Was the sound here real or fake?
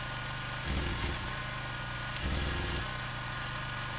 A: real